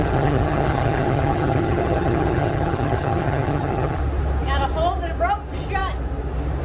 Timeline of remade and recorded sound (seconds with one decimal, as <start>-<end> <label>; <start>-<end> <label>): 0.0-4.0 remade; 4.0-6.6 recorded

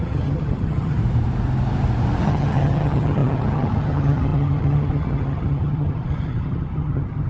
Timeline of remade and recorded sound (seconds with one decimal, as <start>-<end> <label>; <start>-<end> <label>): 0.0-1.0 remade; 1.0-2.2 recorded; 2.2-7.3 remade